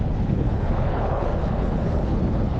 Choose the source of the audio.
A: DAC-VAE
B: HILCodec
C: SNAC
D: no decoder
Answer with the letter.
B